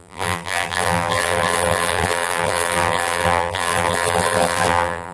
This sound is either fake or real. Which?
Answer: fake